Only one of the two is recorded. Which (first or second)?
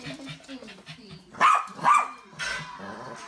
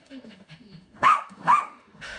first